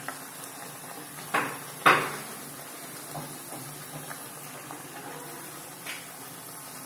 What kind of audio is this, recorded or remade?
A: recorded